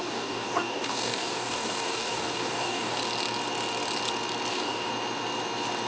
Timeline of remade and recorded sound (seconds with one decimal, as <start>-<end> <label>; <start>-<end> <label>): 0.0-3.0 remade; 3.0-4.5 recorded; 4.5-4.9 remade; 4.9-5.9 recorded